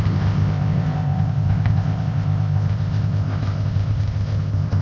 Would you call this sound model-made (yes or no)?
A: yes